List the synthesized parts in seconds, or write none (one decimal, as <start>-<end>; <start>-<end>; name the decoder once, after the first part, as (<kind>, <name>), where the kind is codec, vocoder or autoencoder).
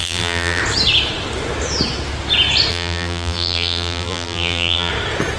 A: 0.0-0.6 (vocoder, BigVGAN v2); 2.7-4.9